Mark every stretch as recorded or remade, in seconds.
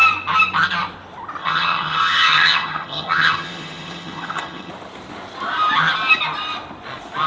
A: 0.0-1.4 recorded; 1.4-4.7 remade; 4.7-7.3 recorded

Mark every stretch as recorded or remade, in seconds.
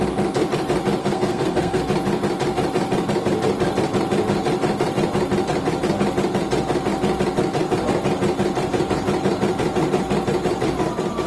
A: 0.0-1.0 recorded; 1.0-1.8 remade; 1.8-11.3 recorded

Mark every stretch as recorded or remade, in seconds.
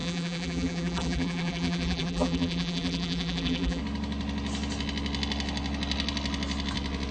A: 0.0-3.8 remade; 3.8-7.1 recorded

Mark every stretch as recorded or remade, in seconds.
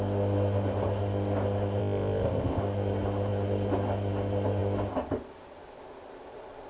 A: 0.0-1.8 recorded; 1.8-2.6 remade; 2.6-6.7 recorded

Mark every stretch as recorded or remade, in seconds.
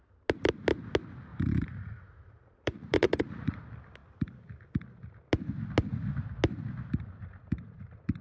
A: 0.0-1.3 recorded; 1.3-3.6 remade; 3.6-7.2 recorded; 7.2-8.2 remade